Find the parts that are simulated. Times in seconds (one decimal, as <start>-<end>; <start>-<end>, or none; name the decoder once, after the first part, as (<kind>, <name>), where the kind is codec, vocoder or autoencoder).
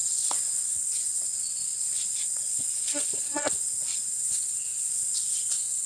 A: 0.0-5.9 (vocoder, WaveNeXt)